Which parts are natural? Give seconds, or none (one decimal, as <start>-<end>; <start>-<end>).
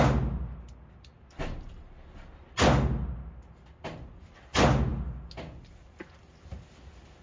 0.0-7.2